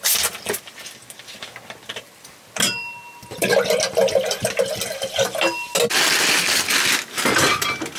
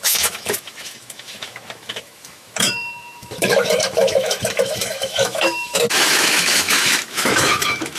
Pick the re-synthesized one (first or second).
second